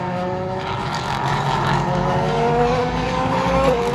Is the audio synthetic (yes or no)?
yes